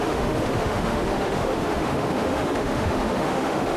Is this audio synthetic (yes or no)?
yes